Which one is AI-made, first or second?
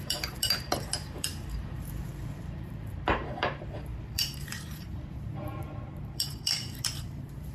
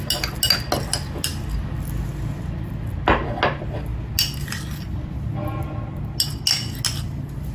first